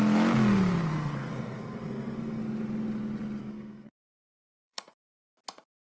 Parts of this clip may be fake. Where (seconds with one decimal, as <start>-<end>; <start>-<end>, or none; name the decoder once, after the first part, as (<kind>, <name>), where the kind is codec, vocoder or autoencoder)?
0.9-2.4 (codec, SNAC); 3.4-5.3